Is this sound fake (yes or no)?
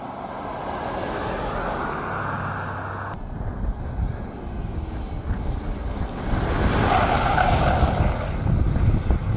no